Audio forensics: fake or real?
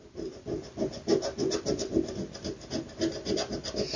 real